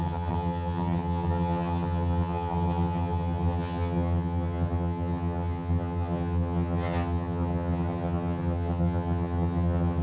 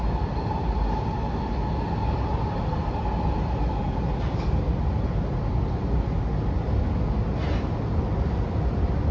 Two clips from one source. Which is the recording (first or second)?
second